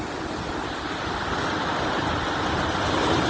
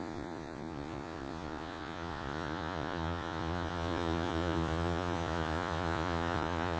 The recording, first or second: first